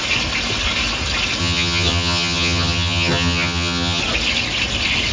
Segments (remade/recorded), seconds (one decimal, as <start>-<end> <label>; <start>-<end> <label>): 0.0-1.4 recorded; 1.4-4.0 remade; 4.0-5.1 recorded